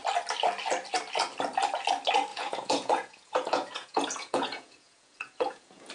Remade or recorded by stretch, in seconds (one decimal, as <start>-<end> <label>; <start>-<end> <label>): 0.0-2.3 recorded; 2.3-5.9 remade